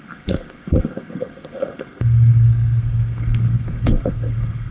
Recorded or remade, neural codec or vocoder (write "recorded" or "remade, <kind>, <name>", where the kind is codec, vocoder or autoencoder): remade, codec, SNAC